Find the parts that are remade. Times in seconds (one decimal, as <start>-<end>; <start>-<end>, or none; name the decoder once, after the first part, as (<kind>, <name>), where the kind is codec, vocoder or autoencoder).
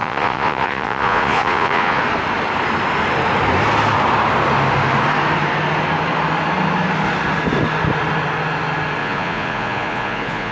0.0-2.0 (vocoder, Vocos); 9.0-10.5